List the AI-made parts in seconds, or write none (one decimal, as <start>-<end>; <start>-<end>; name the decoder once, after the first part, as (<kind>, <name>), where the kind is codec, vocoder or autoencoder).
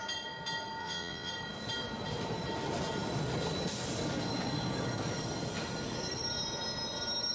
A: 0.8-1.3 (vocoder, WaveNeXt)